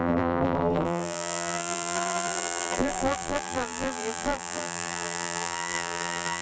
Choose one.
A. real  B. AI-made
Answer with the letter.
B